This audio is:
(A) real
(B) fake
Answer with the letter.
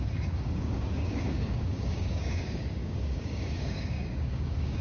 B